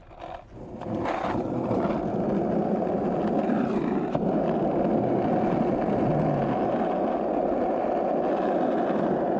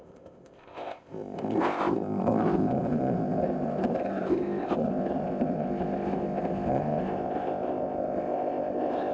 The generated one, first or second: second